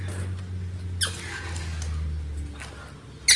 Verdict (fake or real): real